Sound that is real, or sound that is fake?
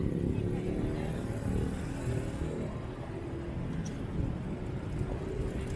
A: real